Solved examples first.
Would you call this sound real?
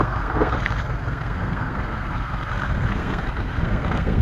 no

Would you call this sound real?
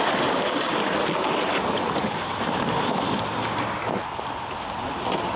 yes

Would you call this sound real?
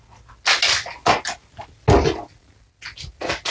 yes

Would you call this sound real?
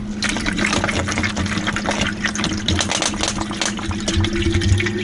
yes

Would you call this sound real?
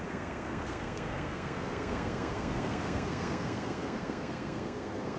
no